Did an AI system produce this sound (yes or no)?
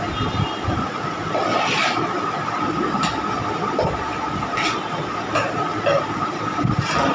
yes